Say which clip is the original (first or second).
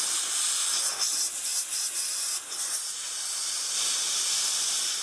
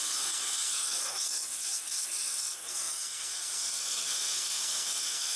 first